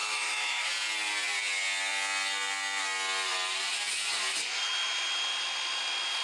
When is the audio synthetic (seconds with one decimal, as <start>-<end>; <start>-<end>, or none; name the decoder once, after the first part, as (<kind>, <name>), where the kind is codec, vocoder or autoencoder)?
0.0-0.7 (autoencoder, DAC-VAE)